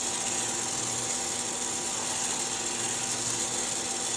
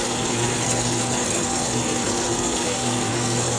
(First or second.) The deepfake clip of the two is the second